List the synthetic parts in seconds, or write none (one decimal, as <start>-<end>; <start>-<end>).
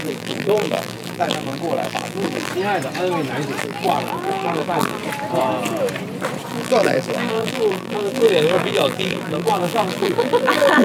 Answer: 0.0-2.5; 3.6-5.0; 6.5-10.8